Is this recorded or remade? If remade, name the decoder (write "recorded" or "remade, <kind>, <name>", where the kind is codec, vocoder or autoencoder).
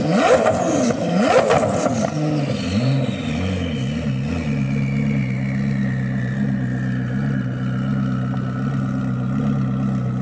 recorded